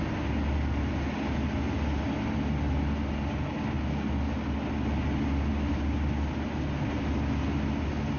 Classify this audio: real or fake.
real